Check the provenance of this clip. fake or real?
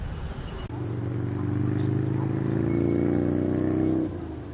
real